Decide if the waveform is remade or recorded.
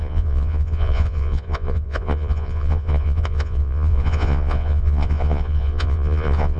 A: remade